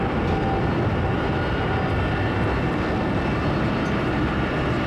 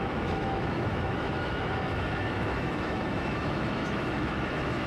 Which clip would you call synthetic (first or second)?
second